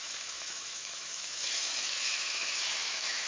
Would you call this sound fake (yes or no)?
yes